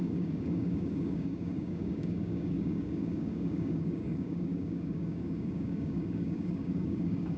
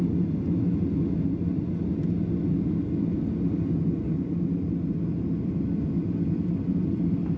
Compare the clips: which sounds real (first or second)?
second